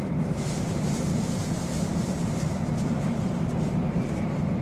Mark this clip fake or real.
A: fake